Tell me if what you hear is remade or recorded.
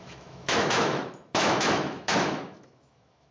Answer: remade